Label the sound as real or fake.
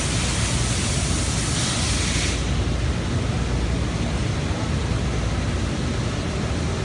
real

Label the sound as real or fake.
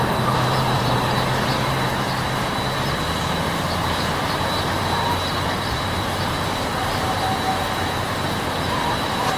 fake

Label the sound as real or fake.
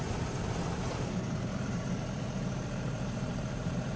fake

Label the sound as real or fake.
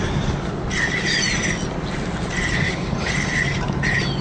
real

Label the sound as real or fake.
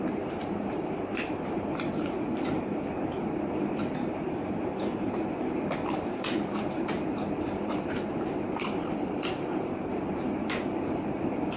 fake